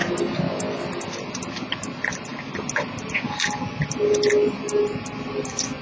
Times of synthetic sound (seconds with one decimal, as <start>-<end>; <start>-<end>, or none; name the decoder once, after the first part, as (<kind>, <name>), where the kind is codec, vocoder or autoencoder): none